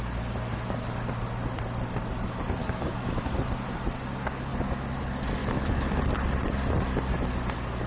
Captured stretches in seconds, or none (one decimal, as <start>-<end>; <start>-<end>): 0.0-2.6; 3.2-5.4; 6.0-7.9